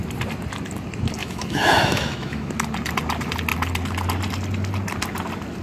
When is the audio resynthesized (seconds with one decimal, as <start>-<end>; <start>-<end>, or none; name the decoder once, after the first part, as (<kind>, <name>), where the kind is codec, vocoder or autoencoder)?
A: 1.2-2.5 (autoencoder, DAC-VAE)